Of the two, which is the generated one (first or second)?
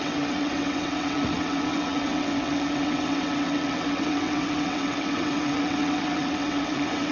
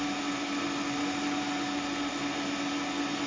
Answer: first